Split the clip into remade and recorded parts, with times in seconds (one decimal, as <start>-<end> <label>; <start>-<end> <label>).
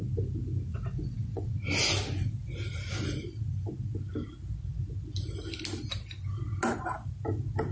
0.0-0.7 recorded; 0.7-1.5 remade; 1.5-7.7 recorded